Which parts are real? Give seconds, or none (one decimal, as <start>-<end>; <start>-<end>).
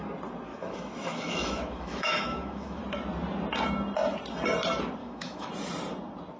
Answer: 0.0-0.5; 2.8-5.0; 5.5-6.4